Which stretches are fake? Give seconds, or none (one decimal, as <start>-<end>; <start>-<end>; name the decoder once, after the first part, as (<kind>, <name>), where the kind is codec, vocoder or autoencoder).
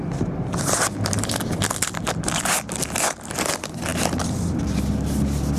none